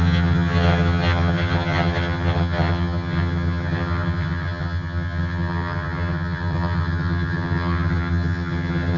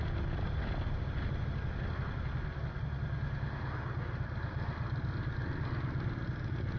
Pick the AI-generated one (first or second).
first